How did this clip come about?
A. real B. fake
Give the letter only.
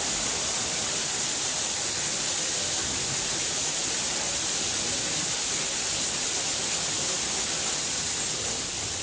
A